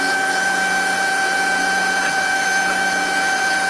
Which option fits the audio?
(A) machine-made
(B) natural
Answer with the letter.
A